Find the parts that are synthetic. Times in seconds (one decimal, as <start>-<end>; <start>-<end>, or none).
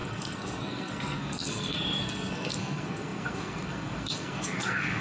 0.0-5.0